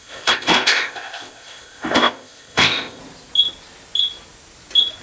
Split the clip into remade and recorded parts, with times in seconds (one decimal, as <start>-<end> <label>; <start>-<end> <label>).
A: 0.0-3.0 remade; 3.0-5.0 recorded